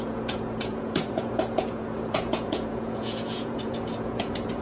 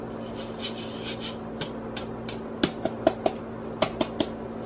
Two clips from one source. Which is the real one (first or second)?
second